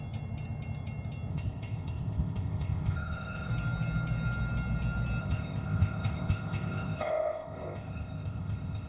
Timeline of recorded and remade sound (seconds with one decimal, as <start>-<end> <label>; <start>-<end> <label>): 0.0-1.3 recorded; 1.3-3.5 remade; 3.5-5.2 recorded; 5.2-8.9 remade